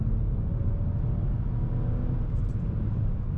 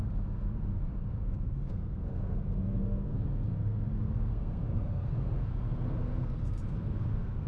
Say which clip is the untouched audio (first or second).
first